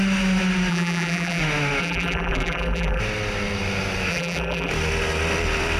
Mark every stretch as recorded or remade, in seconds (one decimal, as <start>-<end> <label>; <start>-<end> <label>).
0.0-0.7 recorded; 0.7-1.4 remade; 1.4-1.8 recorded; 1.8-3.0 remade; 3.0-4.1 recorded; 4.1-4.7 remade; 4.7-5.8 recorded